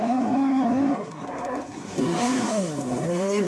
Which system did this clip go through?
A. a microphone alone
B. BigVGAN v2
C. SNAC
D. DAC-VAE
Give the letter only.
C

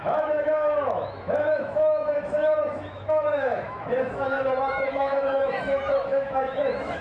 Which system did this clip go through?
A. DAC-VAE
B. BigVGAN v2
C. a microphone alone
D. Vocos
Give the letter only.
A